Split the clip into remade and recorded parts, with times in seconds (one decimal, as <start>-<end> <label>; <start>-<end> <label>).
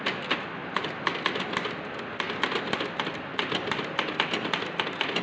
0.0-5.2 recorded